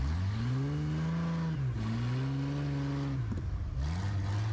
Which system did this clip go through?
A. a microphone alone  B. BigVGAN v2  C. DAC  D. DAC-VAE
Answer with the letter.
A